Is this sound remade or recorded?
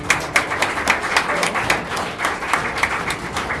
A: recorded